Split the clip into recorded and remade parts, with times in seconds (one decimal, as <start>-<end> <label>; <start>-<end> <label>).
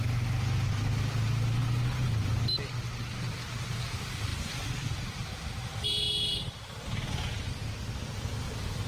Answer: 0.0-8.9 recorded